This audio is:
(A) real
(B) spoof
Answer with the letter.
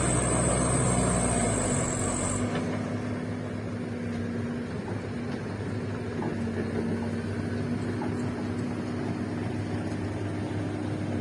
A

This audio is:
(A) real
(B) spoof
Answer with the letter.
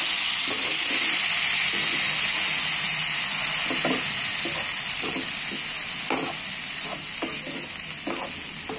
A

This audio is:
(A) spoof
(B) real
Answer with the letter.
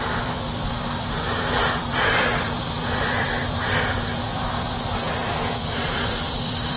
A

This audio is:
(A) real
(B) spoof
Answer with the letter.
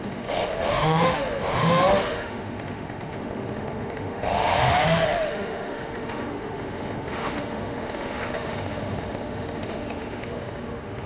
B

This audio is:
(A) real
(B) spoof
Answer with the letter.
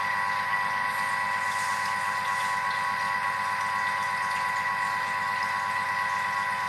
A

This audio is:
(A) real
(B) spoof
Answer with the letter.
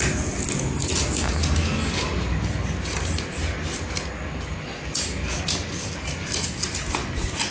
A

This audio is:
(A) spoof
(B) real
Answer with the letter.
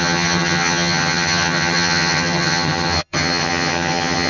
A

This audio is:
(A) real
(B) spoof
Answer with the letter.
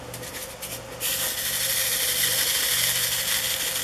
A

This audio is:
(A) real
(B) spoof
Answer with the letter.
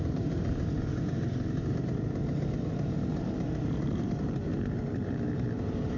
B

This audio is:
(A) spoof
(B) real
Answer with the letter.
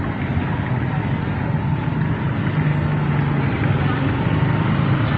B